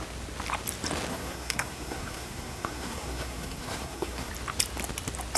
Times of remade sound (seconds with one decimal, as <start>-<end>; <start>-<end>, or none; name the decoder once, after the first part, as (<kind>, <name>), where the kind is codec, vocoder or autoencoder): 1.1-4.3 (codec, SNAC)